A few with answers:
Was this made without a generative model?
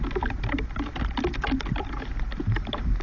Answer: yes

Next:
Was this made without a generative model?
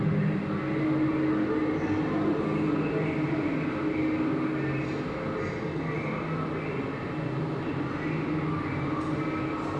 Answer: yes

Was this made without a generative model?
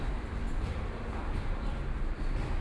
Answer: yes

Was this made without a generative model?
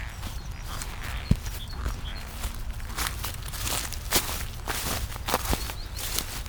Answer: yes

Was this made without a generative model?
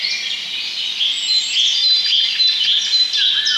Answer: yes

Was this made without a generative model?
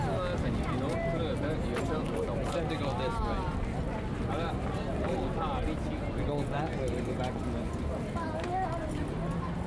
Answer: yes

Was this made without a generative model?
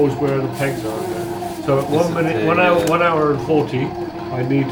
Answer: yes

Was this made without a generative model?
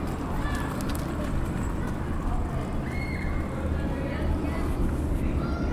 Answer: yes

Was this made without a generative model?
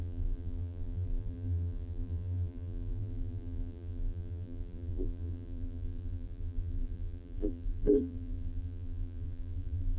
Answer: no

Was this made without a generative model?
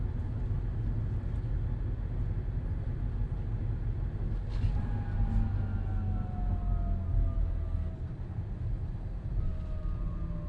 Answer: yes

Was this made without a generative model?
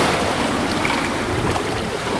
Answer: no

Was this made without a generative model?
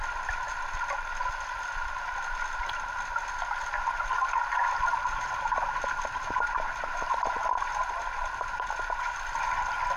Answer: no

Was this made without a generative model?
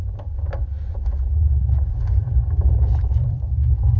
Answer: no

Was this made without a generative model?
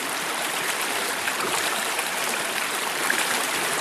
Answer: no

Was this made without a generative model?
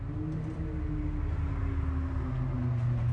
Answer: yes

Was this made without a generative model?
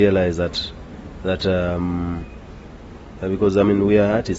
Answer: yes